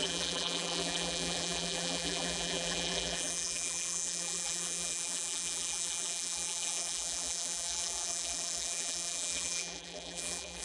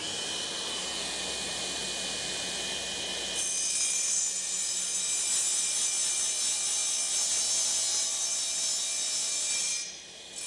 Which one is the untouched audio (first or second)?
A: second